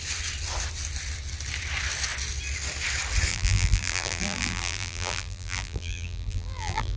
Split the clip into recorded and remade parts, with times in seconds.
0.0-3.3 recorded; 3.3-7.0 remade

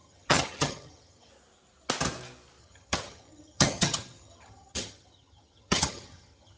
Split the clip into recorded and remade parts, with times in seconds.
0.0-1.3 remade; 1.3-2.6 recorded; 2.6-6.6 remade

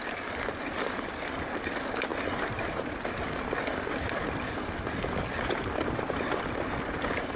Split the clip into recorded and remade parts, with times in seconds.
0.0-7.4 remade

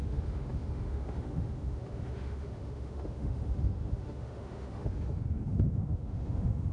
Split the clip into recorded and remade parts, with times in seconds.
0.0-6.7 remade

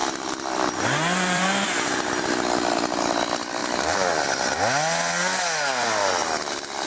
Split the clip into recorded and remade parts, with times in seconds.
0.0-2.3 remade; 2.3-3.6 recorded; 3.6-4.2 remade; 4.2-6.2 recorded; 6.2-6.9 remade